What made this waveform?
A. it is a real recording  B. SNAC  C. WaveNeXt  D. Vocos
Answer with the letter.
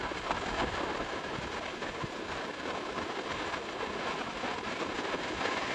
A